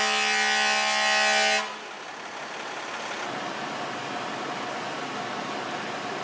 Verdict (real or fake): real